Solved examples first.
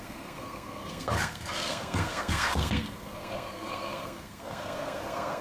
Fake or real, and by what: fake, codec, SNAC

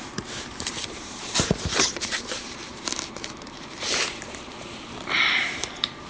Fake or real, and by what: fake, vocoder, BigVGAN v2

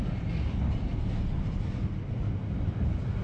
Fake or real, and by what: real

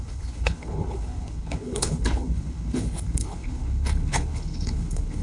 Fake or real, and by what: fake, codec, HILCodec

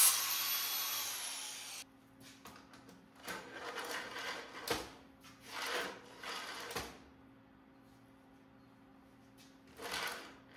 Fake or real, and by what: real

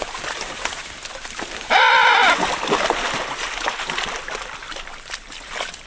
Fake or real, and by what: real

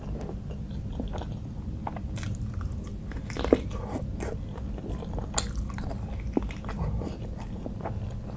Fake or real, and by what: real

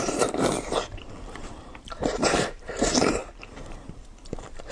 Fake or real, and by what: fake, vocoder, BigVGAN v2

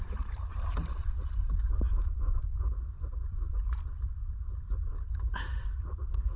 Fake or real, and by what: real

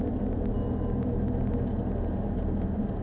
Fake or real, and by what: real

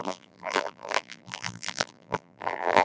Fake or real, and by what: fake, vocoder, BigVGAN v2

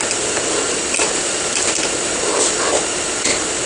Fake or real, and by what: real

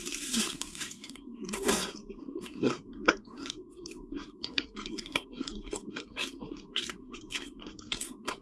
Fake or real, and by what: fake, codec, SNAC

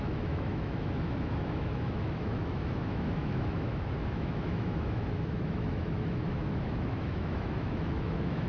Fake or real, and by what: fake, autoencoder, DAC-VAE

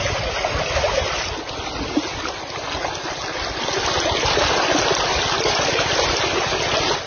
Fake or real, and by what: real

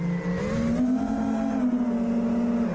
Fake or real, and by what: real